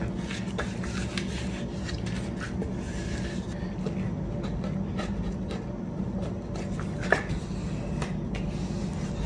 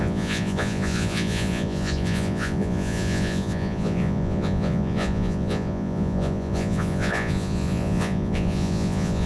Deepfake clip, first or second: second